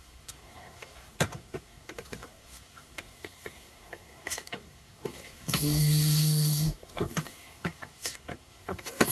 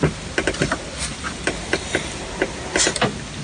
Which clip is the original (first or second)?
second